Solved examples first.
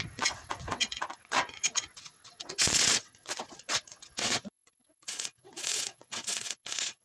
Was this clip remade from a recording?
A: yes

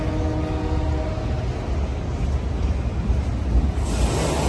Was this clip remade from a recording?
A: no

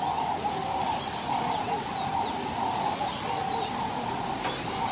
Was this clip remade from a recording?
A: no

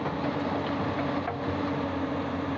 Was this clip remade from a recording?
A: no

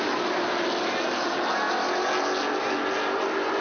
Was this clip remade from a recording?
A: no